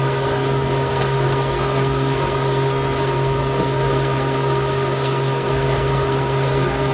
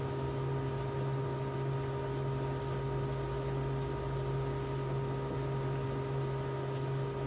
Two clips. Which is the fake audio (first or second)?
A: first